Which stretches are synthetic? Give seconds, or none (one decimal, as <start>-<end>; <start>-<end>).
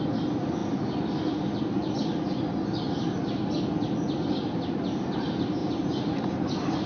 5.6-6.4